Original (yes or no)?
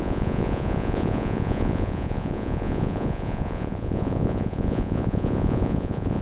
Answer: no